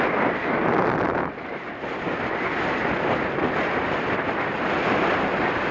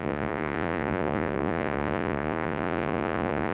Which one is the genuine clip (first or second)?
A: first